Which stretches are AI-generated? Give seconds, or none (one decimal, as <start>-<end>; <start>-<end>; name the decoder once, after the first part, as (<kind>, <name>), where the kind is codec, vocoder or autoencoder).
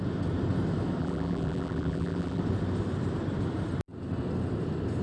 1.0-2.4 (vocoder, BigVGAN v2)